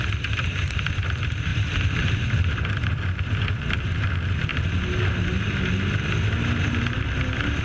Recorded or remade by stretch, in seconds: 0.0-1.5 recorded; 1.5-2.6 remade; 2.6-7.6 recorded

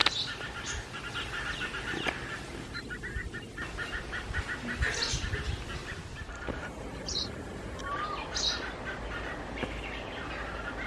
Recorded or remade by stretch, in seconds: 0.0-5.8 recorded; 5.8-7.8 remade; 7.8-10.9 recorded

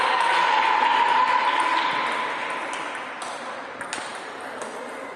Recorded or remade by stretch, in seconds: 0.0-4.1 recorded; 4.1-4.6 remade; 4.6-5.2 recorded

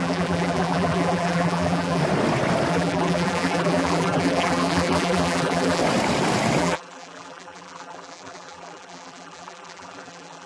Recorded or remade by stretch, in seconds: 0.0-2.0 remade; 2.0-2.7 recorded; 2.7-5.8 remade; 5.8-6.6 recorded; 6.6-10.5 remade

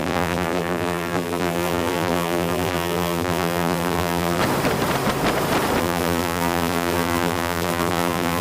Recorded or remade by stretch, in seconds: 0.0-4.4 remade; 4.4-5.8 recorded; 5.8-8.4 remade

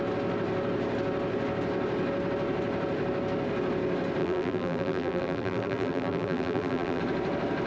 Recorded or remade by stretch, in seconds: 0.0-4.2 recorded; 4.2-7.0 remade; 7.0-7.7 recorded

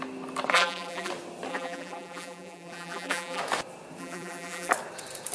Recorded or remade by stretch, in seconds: 0.0-0.5 recorded; 0.5-1.1 remade; 1.1-1.5 recorded; 1.5-3.4 remade; 3.4-4.0 recorded; 4.0-4.7 remade; 4.7-5.3 recorded